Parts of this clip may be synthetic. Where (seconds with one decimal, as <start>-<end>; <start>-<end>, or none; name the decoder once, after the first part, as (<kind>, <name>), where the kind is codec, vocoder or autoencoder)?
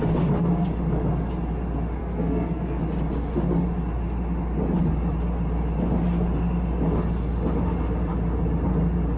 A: 2.0-2.8 (codec, SNAC)